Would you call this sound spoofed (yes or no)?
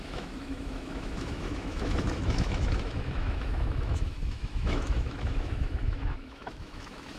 yes